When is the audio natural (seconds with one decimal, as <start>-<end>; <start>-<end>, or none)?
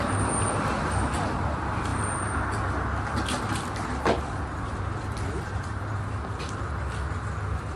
0.0-7.8